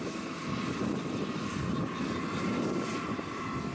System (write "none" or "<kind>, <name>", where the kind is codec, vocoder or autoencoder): none